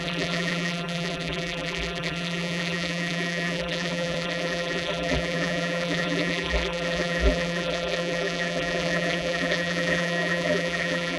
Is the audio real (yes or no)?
no